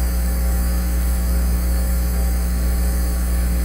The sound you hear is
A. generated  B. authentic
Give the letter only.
A